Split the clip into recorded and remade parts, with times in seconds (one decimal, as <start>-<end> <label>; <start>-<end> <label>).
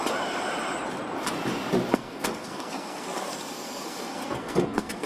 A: 0.0-1.9 recorded; 1.9-5.1 remade